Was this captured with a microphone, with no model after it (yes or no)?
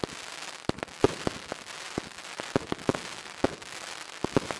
yes